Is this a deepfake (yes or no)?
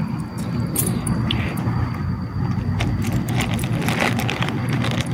yes